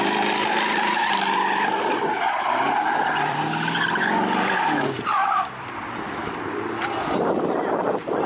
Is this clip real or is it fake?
fake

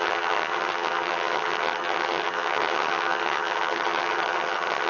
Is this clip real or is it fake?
fake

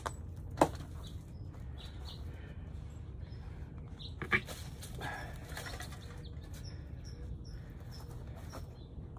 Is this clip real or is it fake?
real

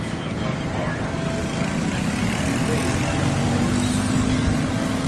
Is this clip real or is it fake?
real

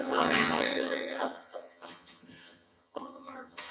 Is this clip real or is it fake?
fake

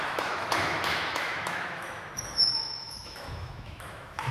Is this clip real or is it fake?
fake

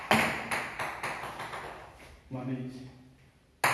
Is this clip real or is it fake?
real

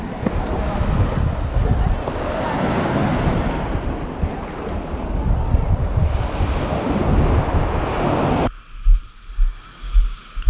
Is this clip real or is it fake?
real